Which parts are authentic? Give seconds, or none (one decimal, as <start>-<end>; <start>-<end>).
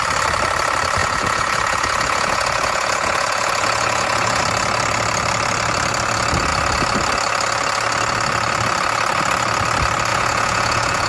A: 0.0-1.0; 4.4-10.1